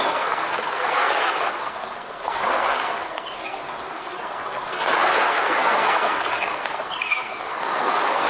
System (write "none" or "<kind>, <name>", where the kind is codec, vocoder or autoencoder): codec, SNAC